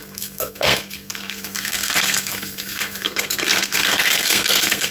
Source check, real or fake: fake